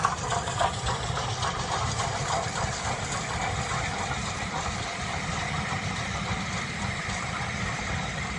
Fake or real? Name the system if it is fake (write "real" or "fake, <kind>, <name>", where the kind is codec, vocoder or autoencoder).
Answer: real